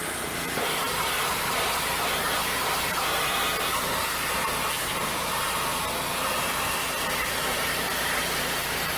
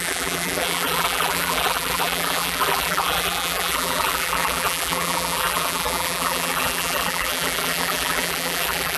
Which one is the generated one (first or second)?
second